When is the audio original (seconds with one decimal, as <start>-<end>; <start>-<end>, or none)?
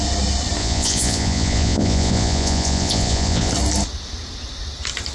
0.0-0.6; 3.5-5.1